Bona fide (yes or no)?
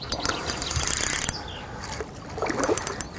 yes